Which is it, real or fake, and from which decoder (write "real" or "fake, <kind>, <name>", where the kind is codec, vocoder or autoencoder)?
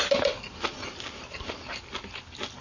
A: real